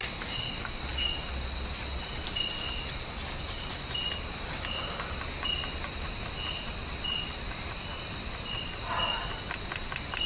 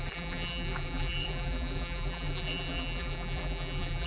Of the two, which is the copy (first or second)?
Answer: second